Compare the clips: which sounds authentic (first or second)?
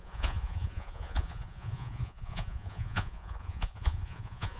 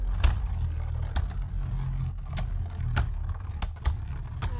second